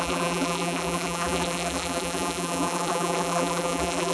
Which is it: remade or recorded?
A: remade